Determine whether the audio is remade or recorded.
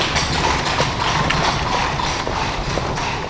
recorded